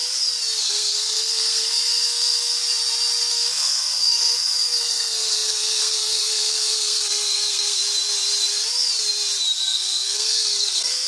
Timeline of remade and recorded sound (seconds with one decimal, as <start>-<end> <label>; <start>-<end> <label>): 0.0-0.6 recorded; 0.6-2.6 remade; 2.6-3.3 recorded; 3.3-7.8 remade; 7.8-9.6 recorded; 9.6-11.1 remade